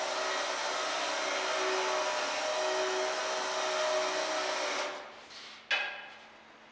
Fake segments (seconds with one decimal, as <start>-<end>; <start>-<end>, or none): 2.5-3.2